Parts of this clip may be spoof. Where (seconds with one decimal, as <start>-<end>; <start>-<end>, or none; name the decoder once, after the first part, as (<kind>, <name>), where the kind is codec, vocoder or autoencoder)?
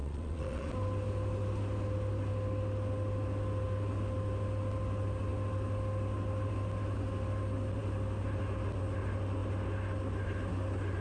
0.0-0.7 (vocoder, Vocos)